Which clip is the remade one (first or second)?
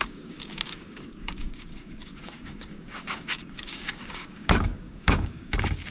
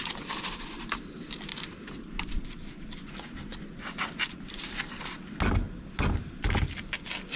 first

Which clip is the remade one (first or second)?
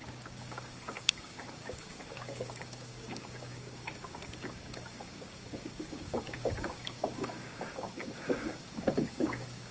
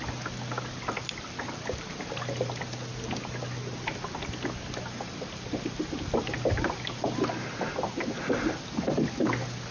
first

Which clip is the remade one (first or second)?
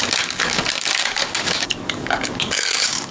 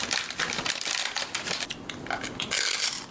first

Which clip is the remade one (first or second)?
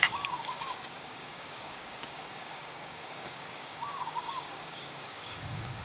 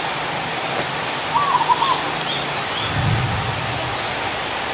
first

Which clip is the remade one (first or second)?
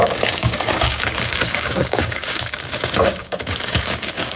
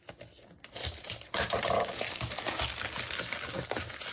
first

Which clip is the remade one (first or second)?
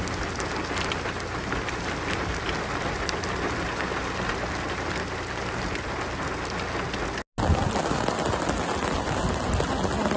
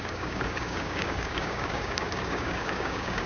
second